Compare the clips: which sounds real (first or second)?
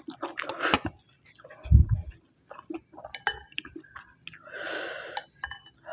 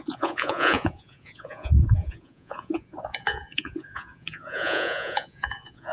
first